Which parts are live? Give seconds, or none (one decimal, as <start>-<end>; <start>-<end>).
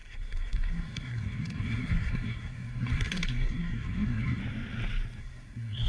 4.4-5.2